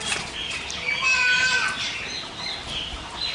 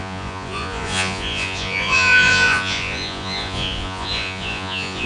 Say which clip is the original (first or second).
first